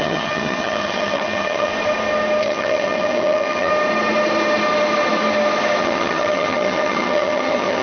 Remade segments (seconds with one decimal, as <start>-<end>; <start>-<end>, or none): 0.0-1.7; 2.4-3.7; 5.8-7.8